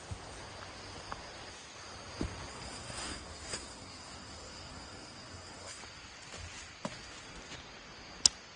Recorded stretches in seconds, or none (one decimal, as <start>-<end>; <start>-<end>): 0.0-2.5; 5.8-8.6